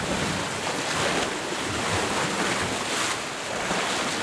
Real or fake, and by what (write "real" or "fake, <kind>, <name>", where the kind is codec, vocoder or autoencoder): real